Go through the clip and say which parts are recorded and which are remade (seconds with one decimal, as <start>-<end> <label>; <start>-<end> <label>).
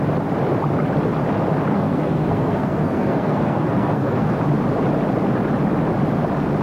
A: 0.0-1.7 recorded; 1.7-4.4 remade; 4.4-6.6 recorded